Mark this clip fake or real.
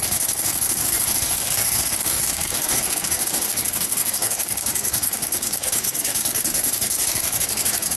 fake